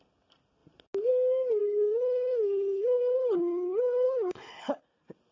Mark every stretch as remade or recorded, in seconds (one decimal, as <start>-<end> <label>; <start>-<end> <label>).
0.0-1.6 recorded; 1.6-4.8 remade; 4.8-5.3 recorded